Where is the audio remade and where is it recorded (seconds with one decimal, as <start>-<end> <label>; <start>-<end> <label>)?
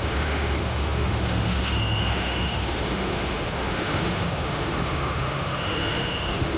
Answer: 0.0-6.6 remade